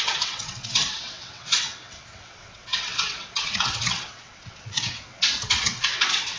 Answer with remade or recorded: remade